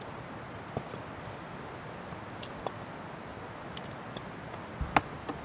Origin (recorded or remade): recorded